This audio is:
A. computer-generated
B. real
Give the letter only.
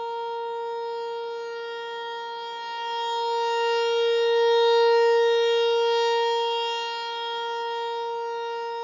B